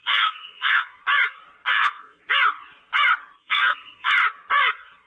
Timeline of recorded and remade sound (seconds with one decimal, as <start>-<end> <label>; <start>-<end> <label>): 0.0-1.0 remade; 1.0-1.7 recorded; 1.7-2.2 remade; 2.2-3.4 recorded; 3.4-4.1 remade; 4.1-5.1 recorded